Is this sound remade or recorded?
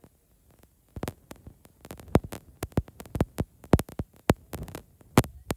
recorded